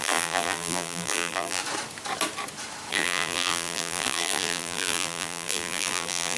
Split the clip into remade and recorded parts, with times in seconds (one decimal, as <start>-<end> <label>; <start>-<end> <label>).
0.0-1.6 remade; 1.6-2.9 recorded; 2.9-6.4 remade